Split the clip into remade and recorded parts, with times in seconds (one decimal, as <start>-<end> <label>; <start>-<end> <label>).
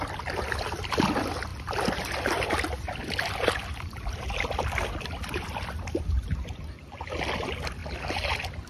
0.0-8.7 recorded